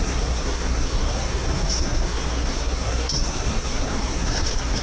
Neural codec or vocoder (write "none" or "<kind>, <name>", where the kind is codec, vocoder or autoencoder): codec, SNAC